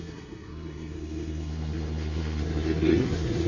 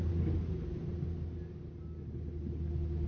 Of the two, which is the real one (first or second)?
second